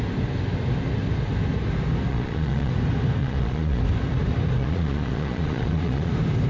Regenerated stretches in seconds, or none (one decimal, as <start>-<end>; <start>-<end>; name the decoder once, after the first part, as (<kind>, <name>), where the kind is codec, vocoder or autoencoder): 2.1-2.7 (vocoder, Vocos); 3.2-3.8; 4.6-6.1